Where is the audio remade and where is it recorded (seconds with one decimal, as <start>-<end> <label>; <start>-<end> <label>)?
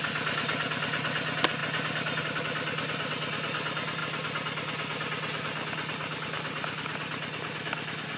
0.0-8.2 recorded